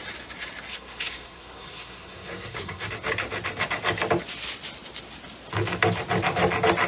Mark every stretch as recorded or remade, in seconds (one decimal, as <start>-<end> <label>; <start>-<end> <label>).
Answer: 0.0-0.7 recorded; 0.7-2.9 remade; 2.9-6.9 recorded